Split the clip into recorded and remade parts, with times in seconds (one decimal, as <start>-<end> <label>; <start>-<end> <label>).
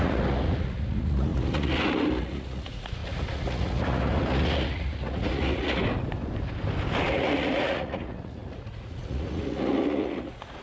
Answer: 0.0-5.8 remade; 5.8-7.1 recorded; 7.1-10.6 remade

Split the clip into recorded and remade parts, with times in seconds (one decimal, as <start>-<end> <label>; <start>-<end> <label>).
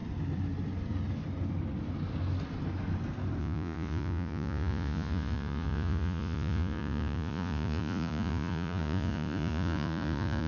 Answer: 0.0-3.4 recorded; 3.4-10.5 remade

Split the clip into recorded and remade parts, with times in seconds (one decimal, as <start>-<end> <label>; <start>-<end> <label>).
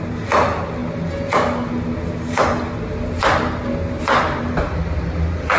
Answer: 0.0-5.6 recorded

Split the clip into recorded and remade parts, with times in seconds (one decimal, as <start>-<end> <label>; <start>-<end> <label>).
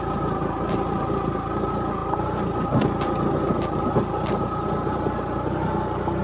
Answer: 0.0-6.2 recorded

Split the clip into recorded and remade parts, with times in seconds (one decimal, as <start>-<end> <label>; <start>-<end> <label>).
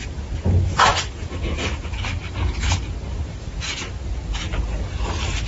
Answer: 0.0-5.5 recorded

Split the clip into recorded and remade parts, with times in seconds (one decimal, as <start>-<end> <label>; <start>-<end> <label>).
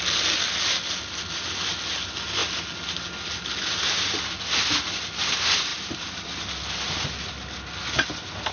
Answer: 0.0-8.5 recorded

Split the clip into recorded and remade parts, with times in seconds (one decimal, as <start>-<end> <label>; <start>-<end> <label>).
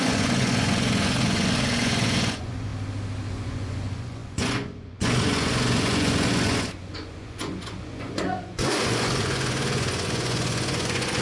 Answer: 0.0-2.7 remade; 2.7-3.3 recorded; 3.3-11.2 remade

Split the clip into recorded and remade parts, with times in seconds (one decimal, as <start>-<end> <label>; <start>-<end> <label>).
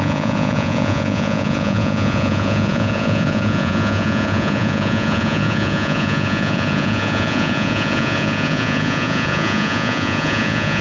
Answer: 0.0-10.8 remade